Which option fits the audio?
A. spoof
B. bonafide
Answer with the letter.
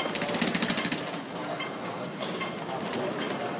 B